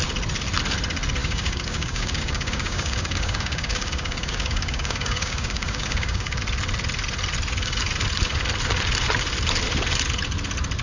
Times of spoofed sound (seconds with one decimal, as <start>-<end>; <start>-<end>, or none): 1.2-6.4